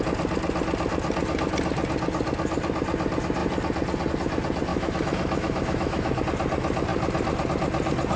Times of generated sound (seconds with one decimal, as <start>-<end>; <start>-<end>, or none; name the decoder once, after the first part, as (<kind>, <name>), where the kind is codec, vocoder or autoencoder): 4.7-6.2 (autoencoder, DAC-VAE)